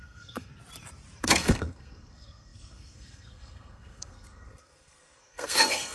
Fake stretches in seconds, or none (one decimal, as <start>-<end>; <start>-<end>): 0.0-0.5; 1.2-5.9